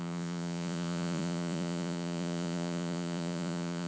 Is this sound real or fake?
fake